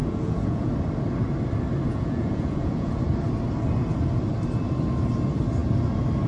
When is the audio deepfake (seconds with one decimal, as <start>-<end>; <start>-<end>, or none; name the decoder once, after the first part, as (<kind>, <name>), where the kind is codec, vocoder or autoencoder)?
0.0-0.7 (vocoder, Vocos); 1.9-3.0